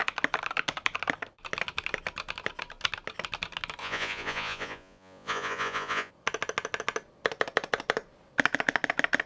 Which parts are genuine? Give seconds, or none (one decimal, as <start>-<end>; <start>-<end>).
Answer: 0.0-3.8; 6.1-9.3